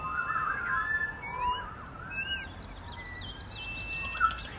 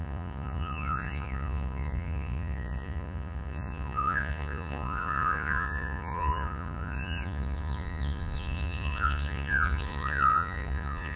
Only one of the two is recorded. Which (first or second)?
first